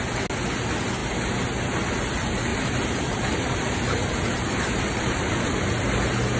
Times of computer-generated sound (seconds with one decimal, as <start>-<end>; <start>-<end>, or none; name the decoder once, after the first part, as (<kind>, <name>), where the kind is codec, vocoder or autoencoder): 2.5-5.4 (vocoder, BigVGAN v2)

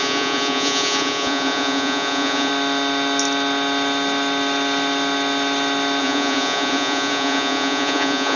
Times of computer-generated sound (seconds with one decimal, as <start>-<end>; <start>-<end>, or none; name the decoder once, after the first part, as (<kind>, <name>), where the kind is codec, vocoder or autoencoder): 0.0-2.5 (vocoder, Vocos); 6.0-8.4

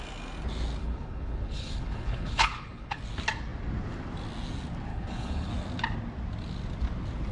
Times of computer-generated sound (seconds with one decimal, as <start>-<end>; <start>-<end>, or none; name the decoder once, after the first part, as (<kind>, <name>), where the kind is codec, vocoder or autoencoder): 0.8-3.0 (codec, HILCodec); 4.9-5.5

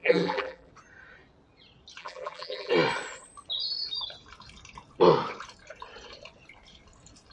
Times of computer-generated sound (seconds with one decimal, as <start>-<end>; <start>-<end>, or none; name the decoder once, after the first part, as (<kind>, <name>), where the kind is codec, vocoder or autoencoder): 0.0-0.7 (vocoder, BigVGAN v2); 2.0-2.7